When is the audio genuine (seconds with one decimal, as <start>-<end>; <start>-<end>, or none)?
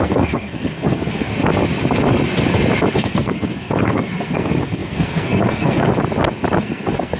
1.3-2.9; 5.9-6.6